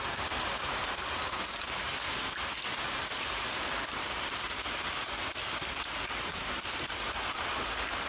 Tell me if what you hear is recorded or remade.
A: recorded